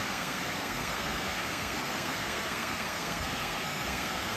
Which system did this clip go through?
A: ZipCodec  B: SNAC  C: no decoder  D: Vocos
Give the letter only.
B